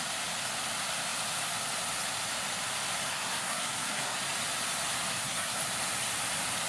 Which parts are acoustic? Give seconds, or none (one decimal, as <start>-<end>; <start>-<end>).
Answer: 0.0-3.1; 4.2-5.1; 5.6-6.7